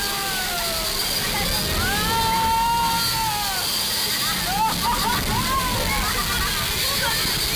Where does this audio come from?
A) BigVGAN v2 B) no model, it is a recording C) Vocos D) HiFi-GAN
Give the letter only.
B